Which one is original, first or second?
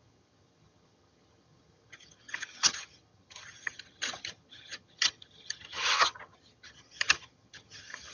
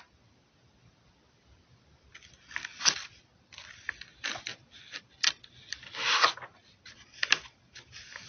second